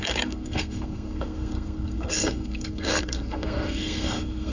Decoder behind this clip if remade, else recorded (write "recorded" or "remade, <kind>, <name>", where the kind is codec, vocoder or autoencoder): remade, codec, SNAC